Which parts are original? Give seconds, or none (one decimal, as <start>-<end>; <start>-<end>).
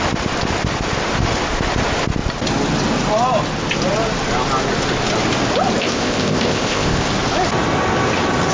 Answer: 0.0-5.8; 7.1-8.5